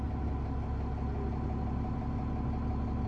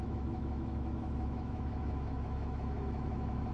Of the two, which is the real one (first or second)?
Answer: first